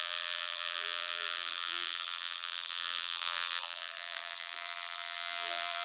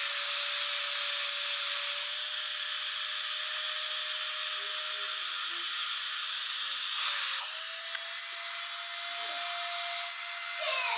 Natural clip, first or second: second